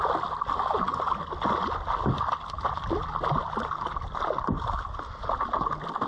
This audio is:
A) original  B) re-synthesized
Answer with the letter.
A